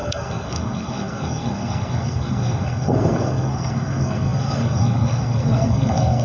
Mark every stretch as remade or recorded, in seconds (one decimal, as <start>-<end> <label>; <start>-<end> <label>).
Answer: 0.0-6.2 remade

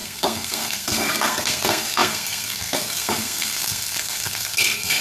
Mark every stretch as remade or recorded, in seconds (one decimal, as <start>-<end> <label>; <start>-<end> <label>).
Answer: 0.0-5.0 remade

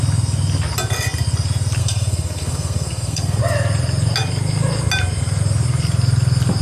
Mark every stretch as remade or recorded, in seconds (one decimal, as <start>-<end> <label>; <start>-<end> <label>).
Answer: 0.0-1.8 recorded; 1.8-3.4 remade; 3.4-6.6 recorded

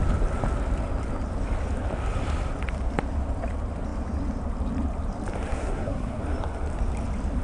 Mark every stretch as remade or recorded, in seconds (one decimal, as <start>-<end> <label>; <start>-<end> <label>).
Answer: 0.0-5.5 recorded; 5.5-6.2 remade; 6.2-7.4 recorded

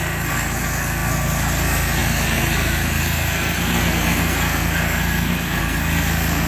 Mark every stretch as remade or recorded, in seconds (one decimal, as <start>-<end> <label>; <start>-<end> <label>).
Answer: 0.0-6.5 remade

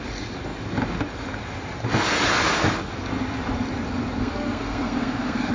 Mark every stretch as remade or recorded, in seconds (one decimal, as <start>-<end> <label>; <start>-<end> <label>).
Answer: 0.0-4.2 recorded; 4.2-5.5 remade

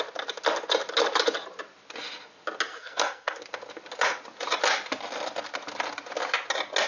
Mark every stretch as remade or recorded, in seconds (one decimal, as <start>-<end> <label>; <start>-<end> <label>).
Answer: 0.0-2.7 recorded; 2.7-3.4 remade; 3.4-6.9 recorded